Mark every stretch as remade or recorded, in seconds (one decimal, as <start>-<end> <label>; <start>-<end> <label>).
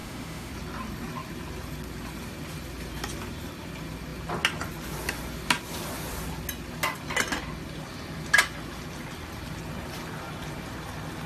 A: 0.0-0.5 remade; 0.5-11.3 recorded